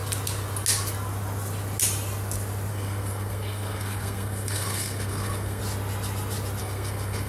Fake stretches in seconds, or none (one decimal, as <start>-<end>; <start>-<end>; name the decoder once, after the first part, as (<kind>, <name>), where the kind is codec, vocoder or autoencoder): 2.7-5.6 (codec, SNAC); 6.6-7.3